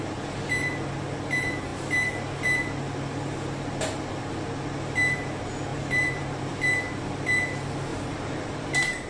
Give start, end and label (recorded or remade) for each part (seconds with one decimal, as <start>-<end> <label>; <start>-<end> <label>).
0.0-5.7 recorded; 5.7-6.4 remade; 6.4-7.9 recorded; 7.9-9.1 remade